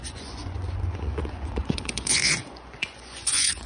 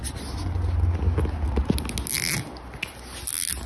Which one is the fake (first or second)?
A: first